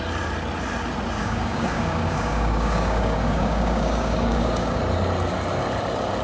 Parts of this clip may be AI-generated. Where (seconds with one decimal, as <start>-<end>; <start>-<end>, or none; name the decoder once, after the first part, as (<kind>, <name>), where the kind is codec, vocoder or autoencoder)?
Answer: 1.2-4.8 (codec, DAC)